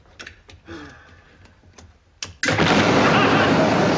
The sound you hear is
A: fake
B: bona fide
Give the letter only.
B